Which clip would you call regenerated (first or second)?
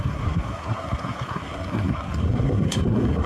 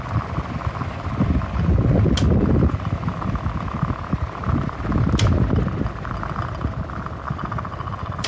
first